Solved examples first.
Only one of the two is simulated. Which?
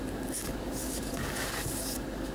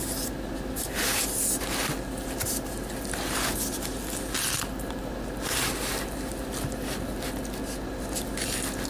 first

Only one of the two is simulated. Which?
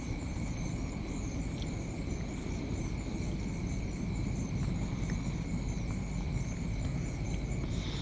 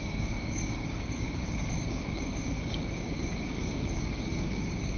second